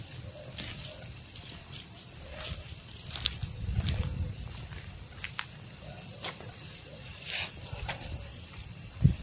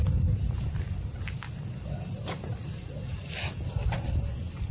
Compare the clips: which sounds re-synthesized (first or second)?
first